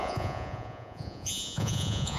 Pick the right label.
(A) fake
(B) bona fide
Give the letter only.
A